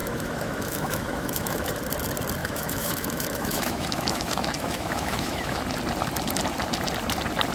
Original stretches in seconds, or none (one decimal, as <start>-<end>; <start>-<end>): 1.7-2.4; 5.6-7.5